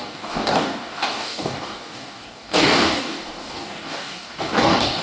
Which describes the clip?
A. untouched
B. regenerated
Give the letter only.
B